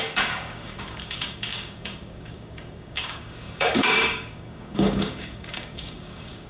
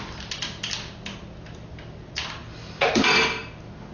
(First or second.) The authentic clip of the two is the second